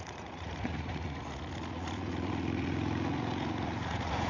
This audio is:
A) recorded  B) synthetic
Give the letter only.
B